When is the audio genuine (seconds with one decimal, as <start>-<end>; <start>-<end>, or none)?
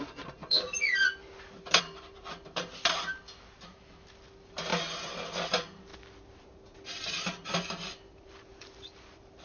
4.7-5.5; 5.9-7.1